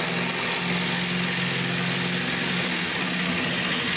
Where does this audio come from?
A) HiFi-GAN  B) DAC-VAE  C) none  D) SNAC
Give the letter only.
C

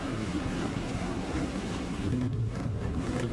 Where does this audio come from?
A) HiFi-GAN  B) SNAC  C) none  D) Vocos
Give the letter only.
B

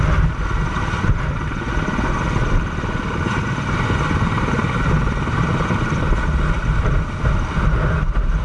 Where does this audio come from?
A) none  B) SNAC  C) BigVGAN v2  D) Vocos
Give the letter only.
A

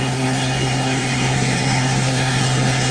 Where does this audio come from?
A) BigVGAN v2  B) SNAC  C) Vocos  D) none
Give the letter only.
B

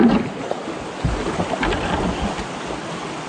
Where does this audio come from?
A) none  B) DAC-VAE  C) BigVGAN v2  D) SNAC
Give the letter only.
A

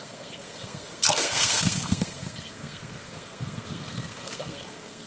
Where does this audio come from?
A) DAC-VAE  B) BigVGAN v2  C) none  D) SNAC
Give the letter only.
D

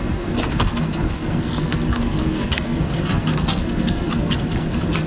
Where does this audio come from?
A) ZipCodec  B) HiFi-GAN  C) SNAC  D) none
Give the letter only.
C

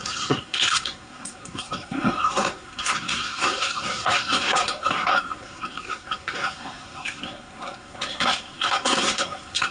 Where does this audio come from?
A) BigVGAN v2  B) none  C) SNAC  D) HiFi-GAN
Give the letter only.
C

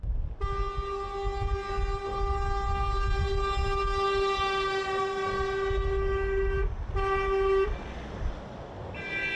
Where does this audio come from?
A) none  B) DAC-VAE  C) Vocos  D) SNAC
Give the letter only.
A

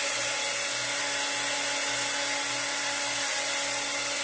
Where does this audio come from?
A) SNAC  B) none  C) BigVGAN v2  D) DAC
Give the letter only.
B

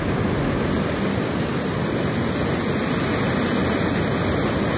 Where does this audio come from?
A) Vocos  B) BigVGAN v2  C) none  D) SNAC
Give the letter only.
C